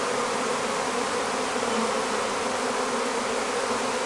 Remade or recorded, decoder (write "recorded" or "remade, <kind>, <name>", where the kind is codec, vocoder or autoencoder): recorded